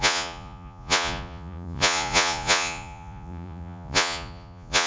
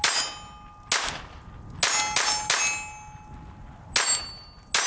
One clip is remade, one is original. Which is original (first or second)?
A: second